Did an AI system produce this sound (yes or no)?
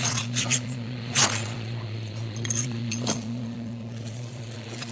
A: yes